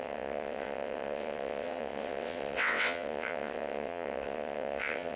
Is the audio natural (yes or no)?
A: no